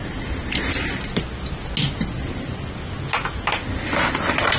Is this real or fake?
real